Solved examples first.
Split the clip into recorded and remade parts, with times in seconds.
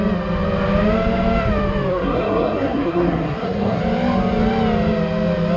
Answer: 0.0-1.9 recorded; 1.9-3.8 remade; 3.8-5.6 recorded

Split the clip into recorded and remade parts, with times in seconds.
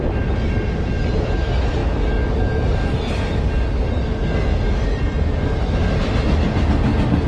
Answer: 0.0-7.3 recorded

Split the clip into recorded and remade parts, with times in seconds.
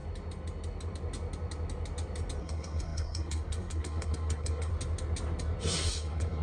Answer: 0.0-2.4 recorded; 2.4-4.7 remade; 4.7-5.6 recorded; 5.6-6.4 remade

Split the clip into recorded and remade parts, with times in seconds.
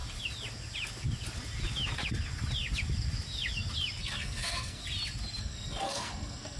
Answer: 0.0-4.0 recorded; 4.0-4.8 remade; 4.8-5.4 recorded; 5.4-6.6 remade